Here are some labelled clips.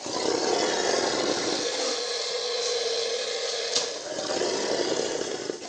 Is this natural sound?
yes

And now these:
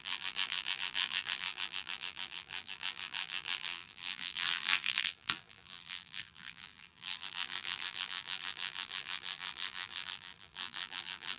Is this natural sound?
no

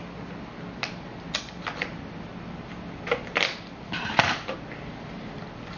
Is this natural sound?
yes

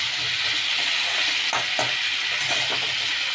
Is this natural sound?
yes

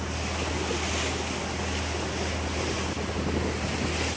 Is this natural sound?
yes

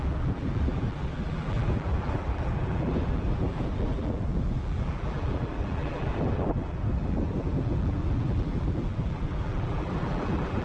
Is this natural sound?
no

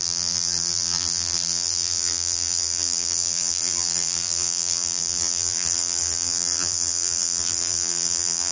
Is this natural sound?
no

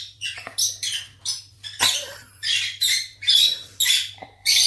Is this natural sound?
no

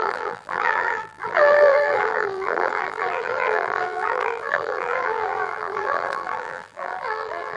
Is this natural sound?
no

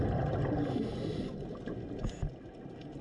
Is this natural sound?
yes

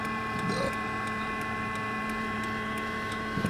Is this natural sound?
no